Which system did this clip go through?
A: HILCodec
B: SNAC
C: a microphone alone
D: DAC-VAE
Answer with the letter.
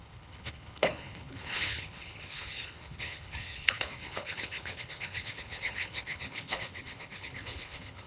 A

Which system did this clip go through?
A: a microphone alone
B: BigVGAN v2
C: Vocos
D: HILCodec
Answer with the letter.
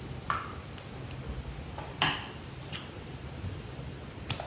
A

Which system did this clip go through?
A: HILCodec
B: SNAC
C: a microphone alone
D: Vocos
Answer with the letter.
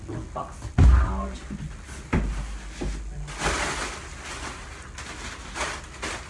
C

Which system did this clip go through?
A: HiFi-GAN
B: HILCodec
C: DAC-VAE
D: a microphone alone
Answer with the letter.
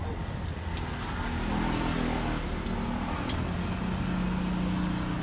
D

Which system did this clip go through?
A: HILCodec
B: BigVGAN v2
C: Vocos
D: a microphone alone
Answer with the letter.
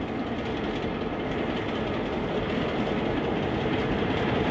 D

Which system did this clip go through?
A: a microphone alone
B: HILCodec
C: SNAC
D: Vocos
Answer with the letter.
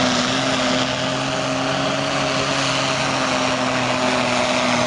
A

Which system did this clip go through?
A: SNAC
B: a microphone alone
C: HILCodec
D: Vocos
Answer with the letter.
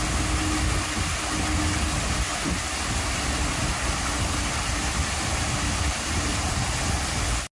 B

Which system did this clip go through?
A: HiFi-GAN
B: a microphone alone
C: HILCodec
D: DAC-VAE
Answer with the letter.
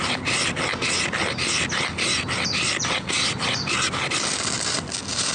B